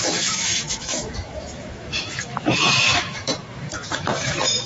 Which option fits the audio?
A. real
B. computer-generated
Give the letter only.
B